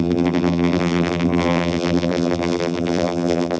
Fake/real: fake